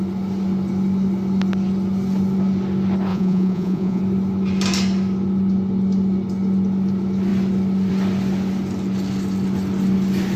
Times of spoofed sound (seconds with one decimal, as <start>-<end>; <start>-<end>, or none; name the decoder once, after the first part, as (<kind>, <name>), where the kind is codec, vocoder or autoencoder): 3.1-4.0 (vocoder, Vocos)